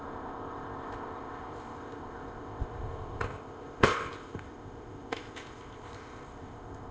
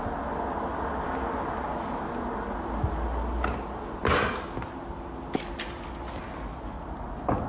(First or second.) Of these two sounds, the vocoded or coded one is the first